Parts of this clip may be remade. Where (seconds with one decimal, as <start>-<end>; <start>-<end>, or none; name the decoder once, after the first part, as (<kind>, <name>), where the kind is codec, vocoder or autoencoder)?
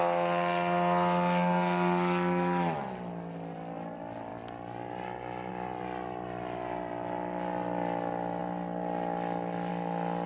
none